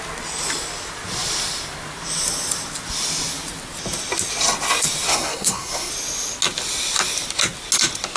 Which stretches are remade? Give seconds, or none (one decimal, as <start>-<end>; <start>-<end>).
5.1-5.9